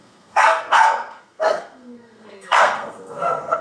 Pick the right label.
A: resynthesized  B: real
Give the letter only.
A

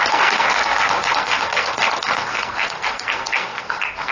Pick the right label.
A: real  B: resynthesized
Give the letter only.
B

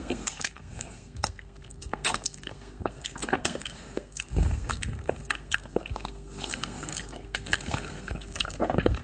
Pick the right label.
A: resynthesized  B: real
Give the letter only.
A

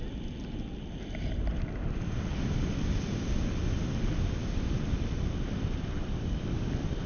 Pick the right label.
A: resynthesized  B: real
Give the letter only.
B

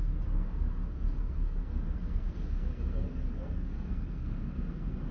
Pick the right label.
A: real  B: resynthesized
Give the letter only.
B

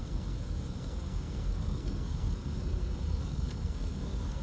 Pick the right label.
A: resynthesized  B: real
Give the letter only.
A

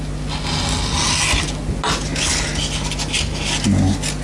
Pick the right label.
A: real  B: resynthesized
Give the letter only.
A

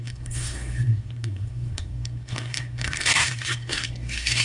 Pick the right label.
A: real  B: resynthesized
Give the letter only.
B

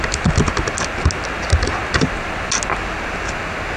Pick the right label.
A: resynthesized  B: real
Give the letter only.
B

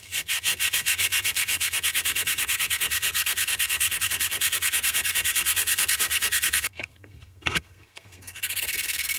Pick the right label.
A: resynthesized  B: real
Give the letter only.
A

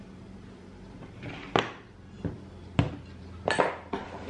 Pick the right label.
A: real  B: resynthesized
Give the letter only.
A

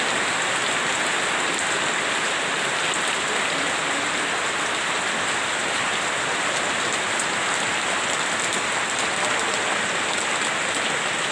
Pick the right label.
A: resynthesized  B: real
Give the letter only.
B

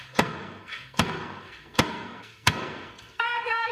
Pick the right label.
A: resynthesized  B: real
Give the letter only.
A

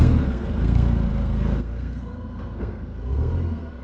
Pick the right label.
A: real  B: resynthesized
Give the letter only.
B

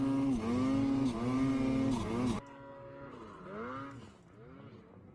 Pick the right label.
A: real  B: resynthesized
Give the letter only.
A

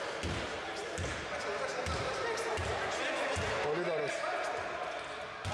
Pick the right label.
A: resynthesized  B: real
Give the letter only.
B